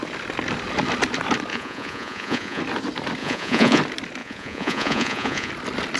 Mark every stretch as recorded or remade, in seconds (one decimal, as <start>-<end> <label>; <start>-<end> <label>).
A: 0.0-1.5 recorded; 1.5-2.6 remade; 2.6-3.2 recorded; 3.2-3.8 remade; 3.8-4.2 recorded; 4.2-5.5 remade; 5.5-6.0 recorded